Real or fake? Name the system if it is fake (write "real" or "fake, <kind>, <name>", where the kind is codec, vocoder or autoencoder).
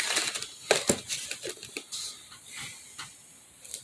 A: real